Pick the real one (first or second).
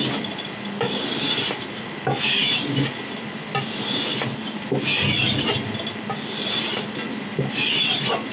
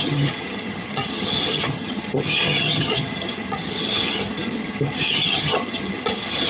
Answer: first